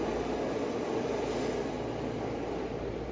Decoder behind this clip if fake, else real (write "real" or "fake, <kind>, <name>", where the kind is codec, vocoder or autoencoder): real